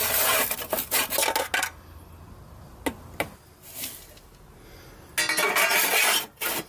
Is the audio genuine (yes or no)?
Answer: yes